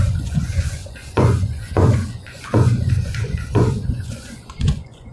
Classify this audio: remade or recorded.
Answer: remade